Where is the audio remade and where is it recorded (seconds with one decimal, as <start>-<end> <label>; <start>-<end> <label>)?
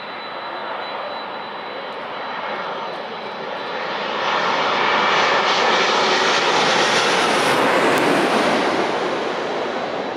0.0-10.2 recorded